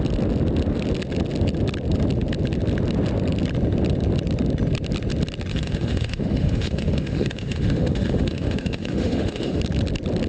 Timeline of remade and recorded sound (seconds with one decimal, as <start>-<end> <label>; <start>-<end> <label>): 0.0-5.5 recorded; 5.5-9.6 remade; 9.6-10.3 recorded